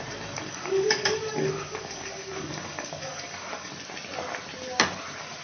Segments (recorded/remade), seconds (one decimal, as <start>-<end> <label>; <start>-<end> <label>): 0.0-0.5 recorded; 0.5-3.7 remade; 3.7-5.4 recorded

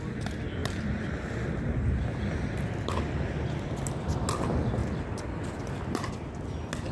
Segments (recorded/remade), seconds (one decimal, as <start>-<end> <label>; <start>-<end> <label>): 0.0-0.6 recorded; 0.6-3.8 remade; 3.8-4.8 recorded; 4.8-6.1 remade; 6.1-6.9 recorded

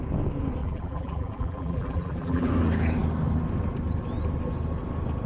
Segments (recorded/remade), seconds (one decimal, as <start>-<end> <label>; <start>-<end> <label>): 0.0-0.6 recorded; 0.6-2.5 remade; 2.5-5.3 recorded

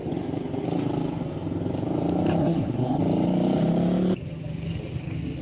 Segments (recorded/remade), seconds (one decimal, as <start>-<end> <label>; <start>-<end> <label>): 0.0-2.4 recorded; 2.4-3.0 remade; 3.0-5.4 recorded